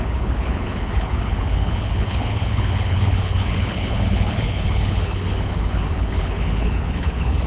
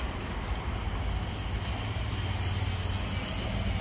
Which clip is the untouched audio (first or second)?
second